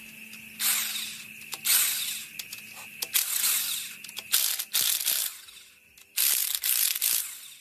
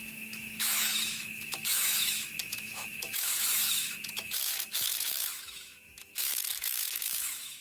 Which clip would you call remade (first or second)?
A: second